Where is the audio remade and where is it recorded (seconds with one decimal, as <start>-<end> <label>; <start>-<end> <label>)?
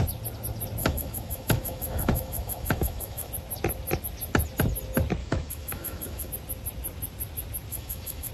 0.0-0.8 recorded; 0.8-3.3 remade; 3.3-5.2 recorded; 5.2-6.3 remade; 6.3-7.7 recorded; 7.7-8.3 remade